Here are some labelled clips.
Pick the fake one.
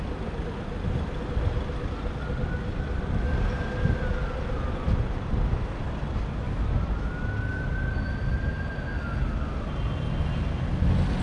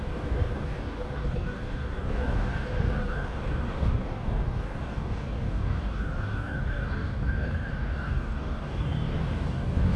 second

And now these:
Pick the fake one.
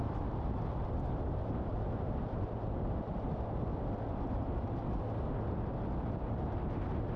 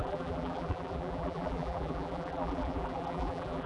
second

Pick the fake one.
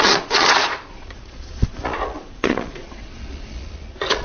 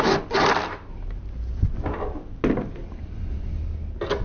first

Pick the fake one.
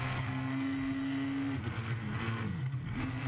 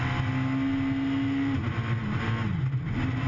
first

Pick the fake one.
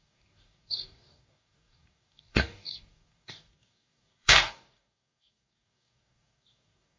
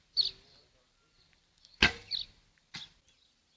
first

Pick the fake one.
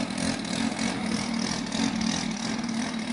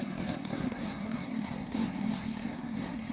second